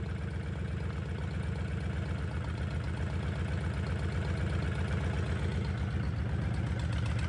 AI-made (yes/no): no